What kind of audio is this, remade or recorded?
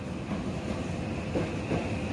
recorded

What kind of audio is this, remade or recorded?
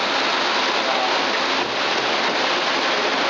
recorded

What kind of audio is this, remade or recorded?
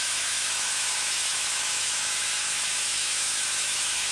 remade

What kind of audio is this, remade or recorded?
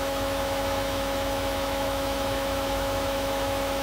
remade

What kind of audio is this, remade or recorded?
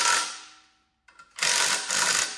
recorded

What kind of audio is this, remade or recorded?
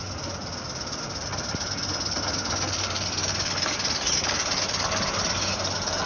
recorded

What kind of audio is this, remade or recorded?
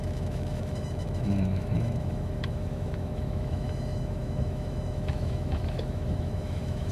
remade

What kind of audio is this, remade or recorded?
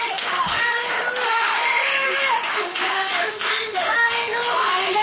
remade